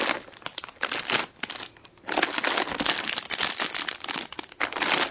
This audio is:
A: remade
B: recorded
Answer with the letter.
B